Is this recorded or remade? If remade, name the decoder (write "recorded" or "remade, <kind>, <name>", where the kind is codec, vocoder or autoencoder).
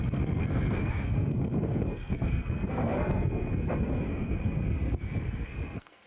remade, codec, SNAC